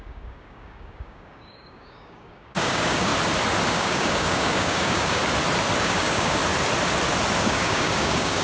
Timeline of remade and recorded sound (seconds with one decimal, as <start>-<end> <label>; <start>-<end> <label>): 0.0-3.1 remade; 3.1-3.7 recorded; 3.7-5.2 remade; 5.2-5.8 recorded; 5.8-6.4 remade; 6.4-7.4 recorded; 7.4-8.4 remade